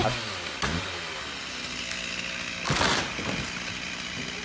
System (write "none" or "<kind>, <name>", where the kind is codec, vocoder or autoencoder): none